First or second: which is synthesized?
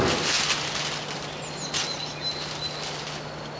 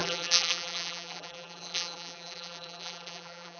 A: second